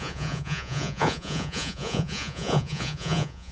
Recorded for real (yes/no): no